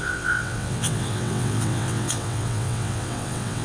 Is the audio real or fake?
fake